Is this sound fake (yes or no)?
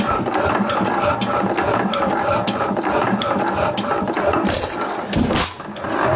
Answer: no